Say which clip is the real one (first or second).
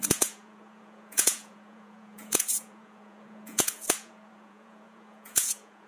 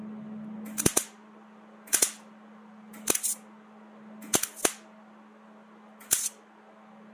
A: second